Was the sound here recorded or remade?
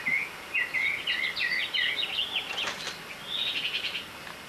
recorded